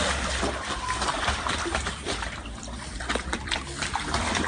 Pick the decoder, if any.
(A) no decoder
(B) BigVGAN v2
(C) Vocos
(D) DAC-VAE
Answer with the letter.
B